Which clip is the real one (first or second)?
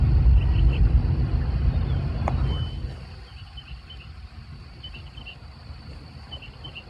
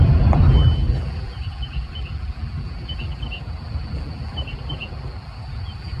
first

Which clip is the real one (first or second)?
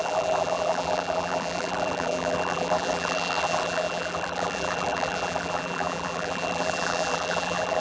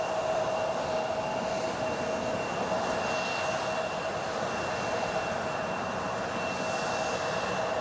second